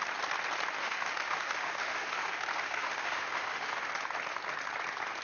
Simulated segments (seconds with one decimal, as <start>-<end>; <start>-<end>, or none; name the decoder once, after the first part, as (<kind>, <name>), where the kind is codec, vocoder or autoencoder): 0.8-3.9 (autoencoder, DAC-VAE)